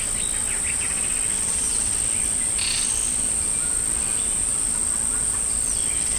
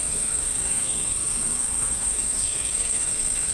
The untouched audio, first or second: first